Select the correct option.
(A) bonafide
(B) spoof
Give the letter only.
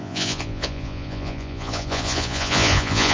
B